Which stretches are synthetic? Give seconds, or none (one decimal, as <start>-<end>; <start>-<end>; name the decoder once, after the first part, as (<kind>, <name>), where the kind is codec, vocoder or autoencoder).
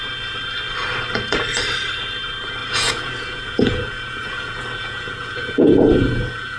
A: 2.6-6.6 (vocoder, Vocos)